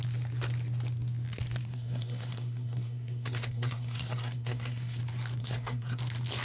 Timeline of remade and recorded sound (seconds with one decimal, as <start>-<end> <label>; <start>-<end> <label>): 0.0-1.7 recorded; 1.7-5.0 remade; 5.0-5.4 recorded; 5.4-6.0 remade; 6.0-6.4 recorded